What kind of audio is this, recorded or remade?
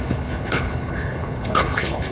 remade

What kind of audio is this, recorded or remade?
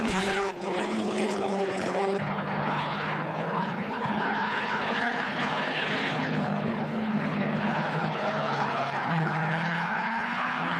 remade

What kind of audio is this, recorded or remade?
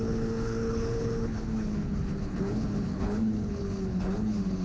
remade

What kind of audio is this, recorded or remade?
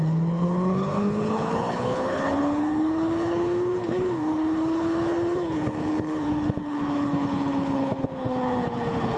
remade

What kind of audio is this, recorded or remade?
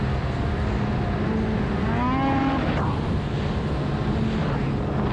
recorded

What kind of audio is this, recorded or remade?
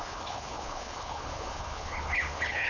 remade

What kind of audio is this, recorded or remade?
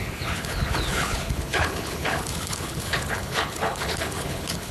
remade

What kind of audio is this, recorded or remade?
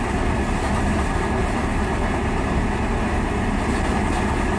recorded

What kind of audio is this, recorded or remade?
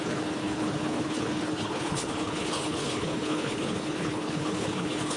remade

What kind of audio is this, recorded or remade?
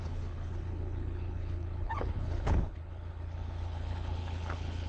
remade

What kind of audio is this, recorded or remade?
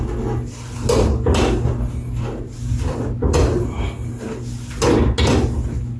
recorded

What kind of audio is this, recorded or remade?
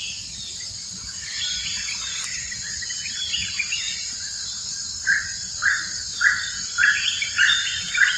recorded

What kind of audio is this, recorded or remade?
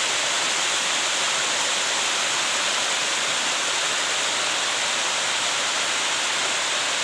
recorded